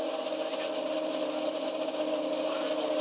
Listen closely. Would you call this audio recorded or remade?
recorded